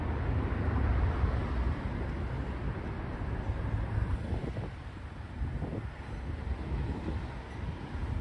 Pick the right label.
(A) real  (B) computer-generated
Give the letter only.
A